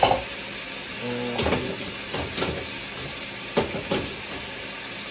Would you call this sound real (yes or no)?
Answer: yes